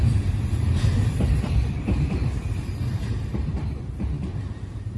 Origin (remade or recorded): remade